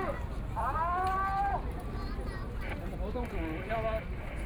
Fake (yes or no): no